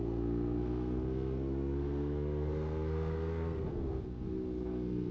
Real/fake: fake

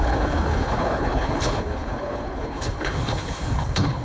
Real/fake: fake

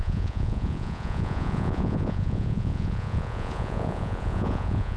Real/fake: fake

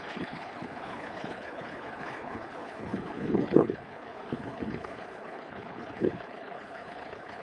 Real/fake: fake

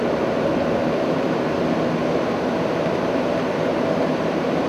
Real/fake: fake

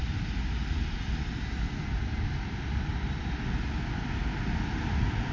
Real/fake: real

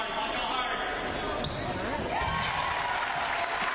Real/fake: real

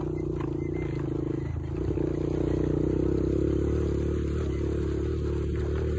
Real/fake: real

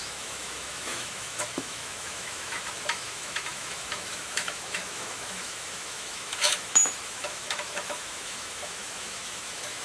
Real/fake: fake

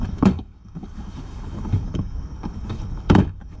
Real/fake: fake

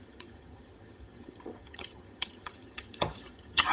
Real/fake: fake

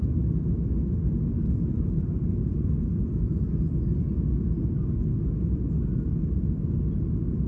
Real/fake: real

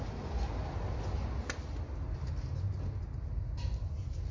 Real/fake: real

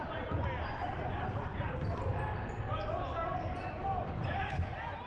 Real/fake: real